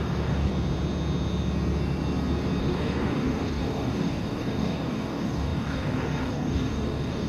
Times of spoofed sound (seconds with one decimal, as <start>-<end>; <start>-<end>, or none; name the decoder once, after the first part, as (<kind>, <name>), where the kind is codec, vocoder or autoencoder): 0.0-0.5 (codec, DAC); 2.6-7.3